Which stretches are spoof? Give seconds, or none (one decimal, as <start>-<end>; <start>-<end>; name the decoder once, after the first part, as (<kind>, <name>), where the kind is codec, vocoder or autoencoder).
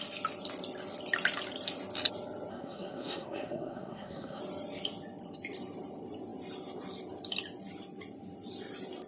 2.5-4.4 (codec, SNAC)